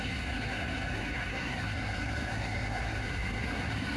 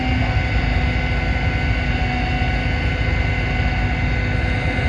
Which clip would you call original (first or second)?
second